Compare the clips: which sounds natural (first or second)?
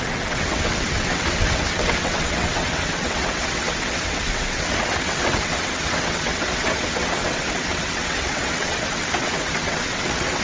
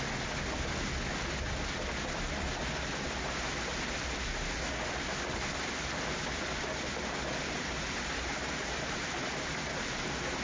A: second